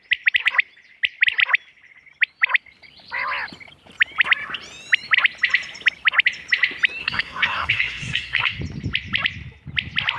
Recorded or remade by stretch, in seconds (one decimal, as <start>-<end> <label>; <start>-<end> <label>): 0.0-7.0 recorded; 7.0-8.6 remade; 8.6-10.2 recorded